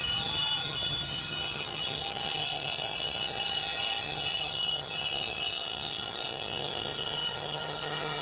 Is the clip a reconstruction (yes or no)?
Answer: yes